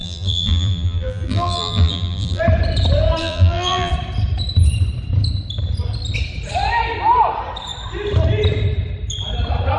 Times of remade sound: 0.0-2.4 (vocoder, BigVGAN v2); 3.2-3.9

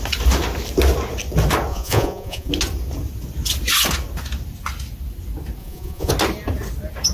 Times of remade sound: 1.7-2.5 (vocoder, Vocos); 5.6-6.1

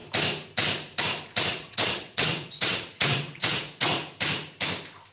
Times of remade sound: 1.5-3.9 (vocoder, WaveNeXt)

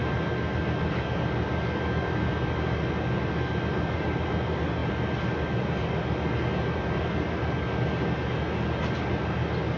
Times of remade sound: none

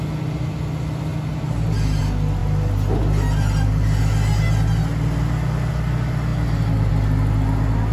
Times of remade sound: none